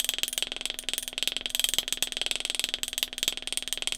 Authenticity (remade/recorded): recorded